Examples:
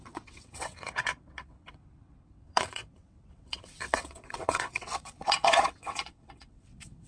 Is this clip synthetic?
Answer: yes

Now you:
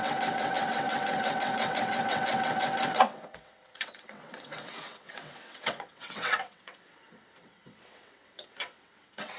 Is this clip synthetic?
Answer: yes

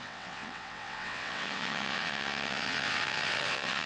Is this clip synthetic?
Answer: yes